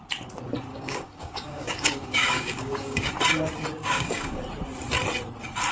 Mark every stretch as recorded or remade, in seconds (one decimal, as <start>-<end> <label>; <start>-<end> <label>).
0.0-0.7 recorded; 0.7-3.1 remade; 3.1-3.8 recorded; 3.8-4.4 remade; 4.4-5.7 recorded